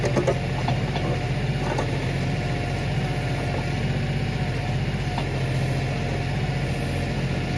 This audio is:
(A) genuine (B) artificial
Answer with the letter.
A